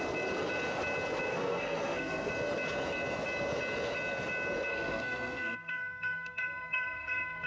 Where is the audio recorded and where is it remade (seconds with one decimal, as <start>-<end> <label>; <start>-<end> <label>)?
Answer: 0.0-1.3 recorded; 1.3-2.3 remade; 2.3-4.7 recorded; 4.7-7.5 remade